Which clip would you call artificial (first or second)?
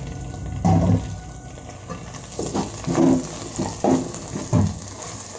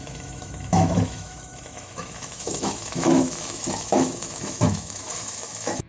second